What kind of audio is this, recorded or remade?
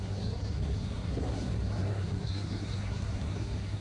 remade